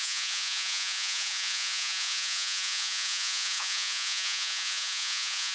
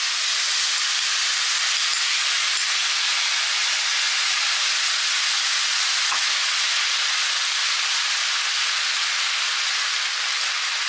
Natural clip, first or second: second